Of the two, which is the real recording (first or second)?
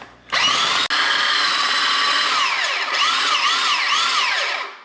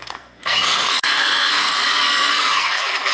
first